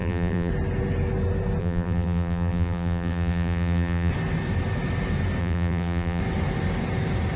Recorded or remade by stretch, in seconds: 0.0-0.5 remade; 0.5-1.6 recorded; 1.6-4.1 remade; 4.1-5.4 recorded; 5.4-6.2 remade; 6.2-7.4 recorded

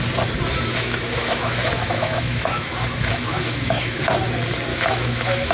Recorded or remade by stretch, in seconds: 0.0-0.7 recorded; 0.7-4.0 remade; 4.0-4.7 recorded; 4.7-5.5 remade

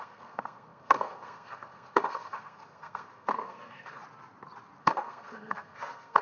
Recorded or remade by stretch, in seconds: 0.0-4.0 remade; 4.0-4.8 recorded; 4.8-6.2 remade